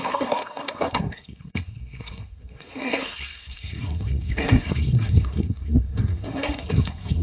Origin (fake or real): fake